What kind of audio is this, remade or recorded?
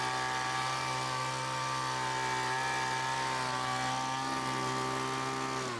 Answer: recorded